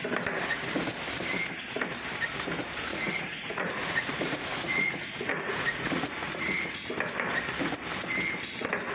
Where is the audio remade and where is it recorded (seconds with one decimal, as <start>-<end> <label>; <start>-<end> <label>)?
0.0-2.9 recorded; 2.9-6.9 remade; 6.9-8.9 recorded

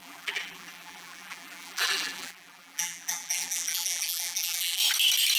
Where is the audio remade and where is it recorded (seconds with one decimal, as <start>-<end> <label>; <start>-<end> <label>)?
0.0-4.8 remade; 4.8-5.4 recorded

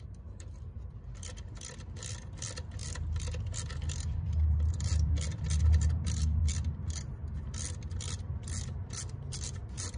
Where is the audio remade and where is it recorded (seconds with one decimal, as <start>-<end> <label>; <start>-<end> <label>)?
0.0-10.0 recorded

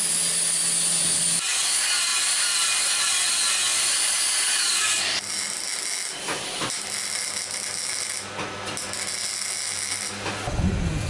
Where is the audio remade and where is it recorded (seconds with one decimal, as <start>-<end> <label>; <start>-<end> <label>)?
0.0-11.1 recorded

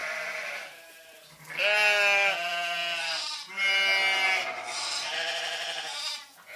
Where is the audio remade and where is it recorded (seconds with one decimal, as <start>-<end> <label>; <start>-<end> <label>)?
0.0-1.6 remade; 1.6-2.5 recorded; 2.5-3.5 remade; 3.5-4.4 recorded; 4.4-5.6 remade; 5.6-6.6 recorded

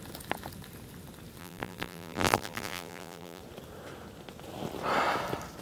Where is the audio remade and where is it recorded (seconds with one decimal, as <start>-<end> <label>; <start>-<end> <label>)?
0.0-1.4 recorded; 1.4-3.4 remade; 3.4-5.6 recorded

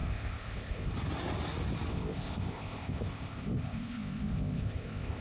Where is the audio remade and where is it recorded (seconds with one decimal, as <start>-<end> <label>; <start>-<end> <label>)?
0.0-0.9 remade; 0.9-1.9 recorded; 1.9-5.2 remade

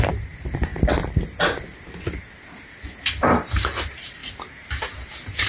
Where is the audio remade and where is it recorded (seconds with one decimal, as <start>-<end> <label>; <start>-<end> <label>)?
0.0-0.7 remade; 0.7-2.9 recorded; 2.9-4.2 remade; 4.2-5.5 recorded